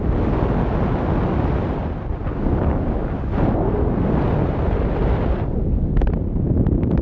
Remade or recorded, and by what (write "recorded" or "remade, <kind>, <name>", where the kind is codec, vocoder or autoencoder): recorded